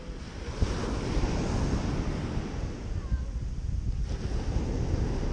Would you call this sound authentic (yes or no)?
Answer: yes